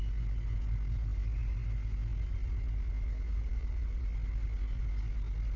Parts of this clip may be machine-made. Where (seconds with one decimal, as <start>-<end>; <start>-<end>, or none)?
3.3-4.0

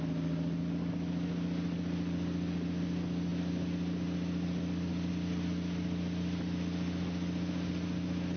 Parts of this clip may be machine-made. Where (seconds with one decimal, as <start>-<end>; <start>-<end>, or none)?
none